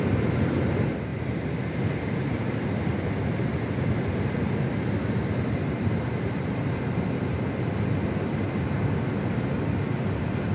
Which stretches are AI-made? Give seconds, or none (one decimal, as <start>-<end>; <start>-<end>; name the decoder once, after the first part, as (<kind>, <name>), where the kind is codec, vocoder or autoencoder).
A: none